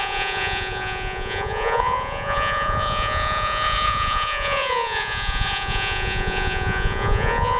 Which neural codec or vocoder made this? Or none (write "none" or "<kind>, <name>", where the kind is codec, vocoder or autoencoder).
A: vocoder, Vocos